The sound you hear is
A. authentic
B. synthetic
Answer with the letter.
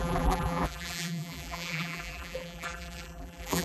B